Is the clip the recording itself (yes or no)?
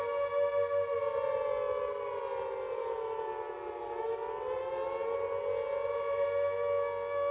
yes